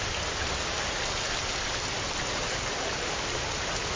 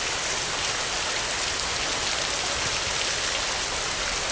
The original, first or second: second